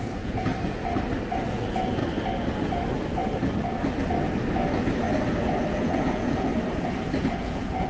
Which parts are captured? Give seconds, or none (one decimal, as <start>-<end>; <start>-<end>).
0.5-1.4; 2.0-5.7; 6.5-7.2